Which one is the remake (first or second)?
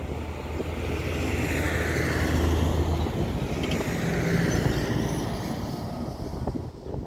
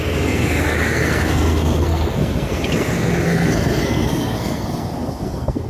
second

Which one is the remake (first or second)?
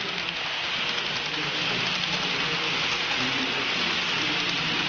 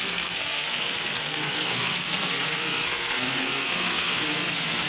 second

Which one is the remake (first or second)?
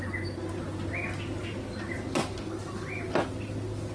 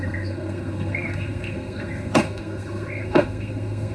second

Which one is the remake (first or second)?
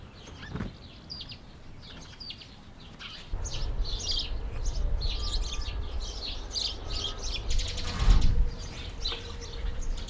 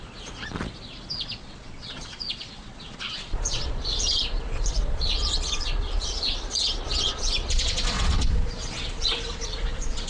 second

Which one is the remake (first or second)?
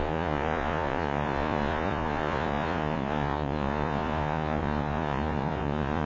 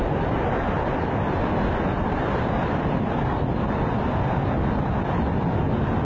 first